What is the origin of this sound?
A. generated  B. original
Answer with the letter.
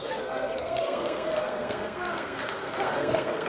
A